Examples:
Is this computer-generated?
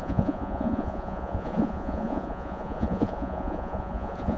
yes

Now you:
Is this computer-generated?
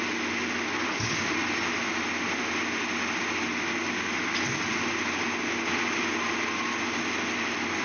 no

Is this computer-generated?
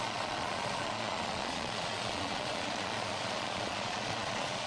yes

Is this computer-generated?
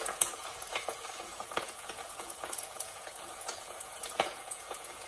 yes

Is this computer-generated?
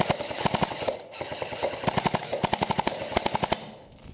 no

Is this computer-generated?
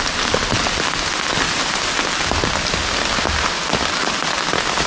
no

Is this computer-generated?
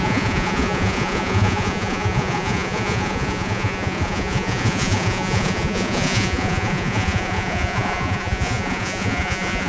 yes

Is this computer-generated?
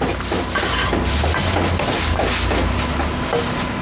no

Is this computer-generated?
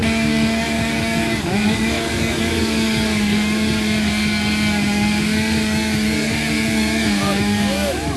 yes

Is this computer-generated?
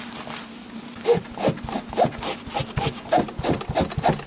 no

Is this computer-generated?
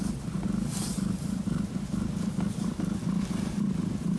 no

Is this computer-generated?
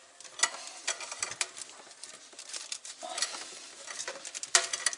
no